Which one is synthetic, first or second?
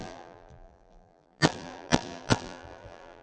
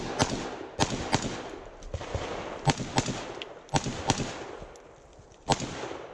first